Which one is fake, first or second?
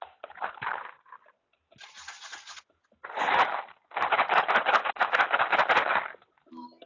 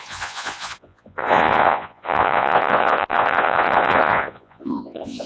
second